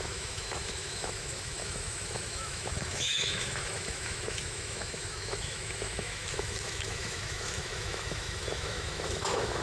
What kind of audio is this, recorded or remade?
remade